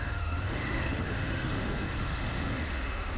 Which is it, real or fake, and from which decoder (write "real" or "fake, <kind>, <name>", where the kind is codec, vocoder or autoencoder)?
fake, autoencoder, DAC-VAE